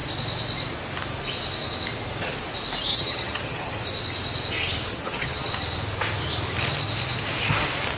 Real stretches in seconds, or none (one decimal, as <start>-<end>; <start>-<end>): 0.0-2.9; 3.7-4.9; 5.5-8.0